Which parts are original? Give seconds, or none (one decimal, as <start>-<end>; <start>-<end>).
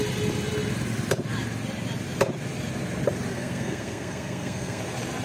0.0-3.3; 4.8-5.2